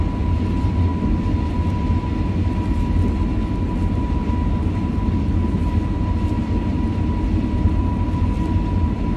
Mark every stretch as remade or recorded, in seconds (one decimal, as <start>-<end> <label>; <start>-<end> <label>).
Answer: 0.0-5.6 recorded; 5.6-7.9 remade; 7.9-9.2 recorded